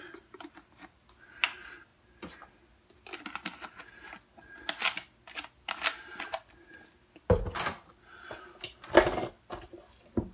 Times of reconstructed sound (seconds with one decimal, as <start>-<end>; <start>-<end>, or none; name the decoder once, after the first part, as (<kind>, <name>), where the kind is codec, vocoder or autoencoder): none